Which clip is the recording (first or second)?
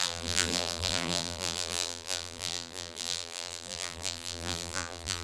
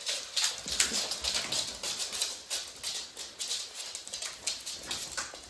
second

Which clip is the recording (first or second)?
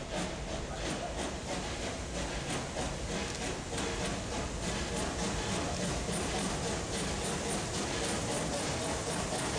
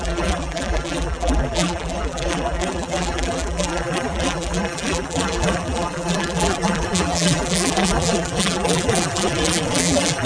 first